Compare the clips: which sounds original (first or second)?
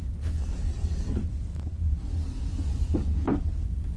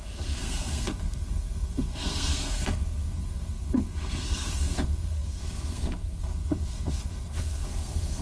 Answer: first